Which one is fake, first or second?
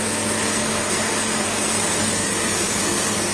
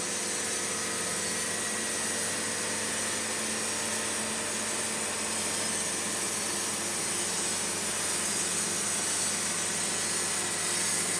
first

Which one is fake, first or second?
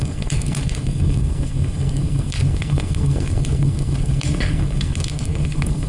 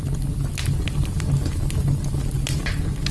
first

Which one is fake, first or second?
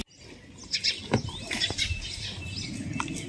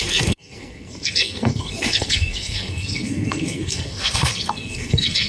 second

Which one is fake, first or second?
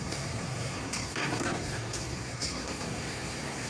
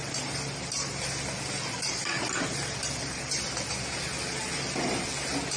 first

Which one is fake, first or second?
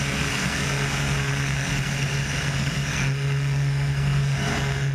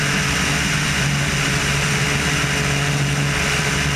first